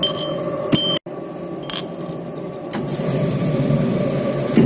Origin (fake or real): real